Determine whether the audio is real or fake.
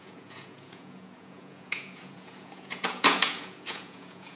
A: fake